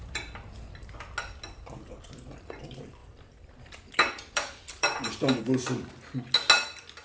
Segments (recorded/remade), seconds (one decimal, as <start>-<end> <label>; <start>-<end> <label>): 0.0-3.0 recorded; 3.0-5.4 remade; 5.4-7.0 recorded